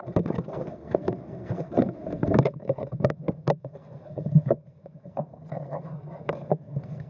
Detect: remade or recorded remade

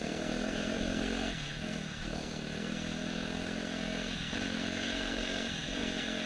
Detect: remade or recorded remade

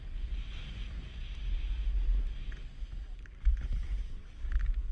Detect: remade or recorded recorded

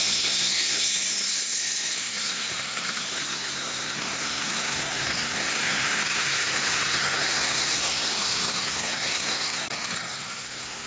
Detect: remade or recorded remade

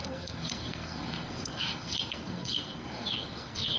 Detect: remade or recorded remade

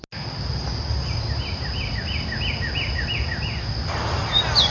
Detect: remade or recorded recorded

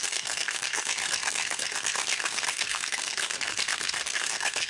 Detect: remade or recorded remade